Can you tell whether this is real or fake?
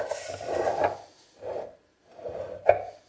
real